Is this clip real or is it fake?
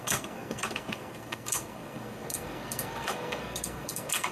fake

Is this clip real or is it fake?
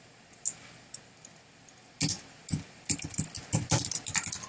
real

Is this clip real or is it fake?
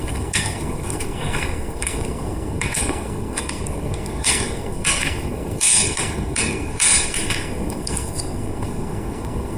fake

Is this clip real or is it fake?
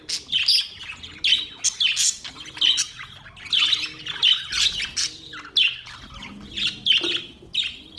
real